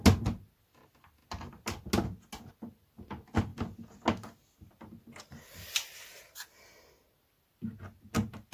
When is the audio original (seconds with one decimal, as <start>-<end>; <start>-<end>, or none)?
0.0-8.5

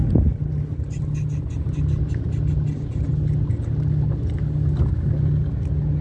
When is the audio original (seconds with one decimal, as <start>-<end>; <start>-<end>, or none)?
0.0-6.0

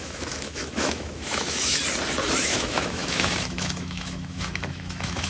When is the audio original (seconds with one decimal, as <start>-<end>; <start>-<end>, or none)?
1.8-2.4

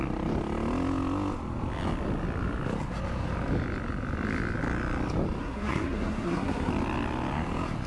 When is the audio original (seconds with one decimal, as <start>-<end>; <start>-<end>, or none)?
0.0-5.4; 6.7-7.9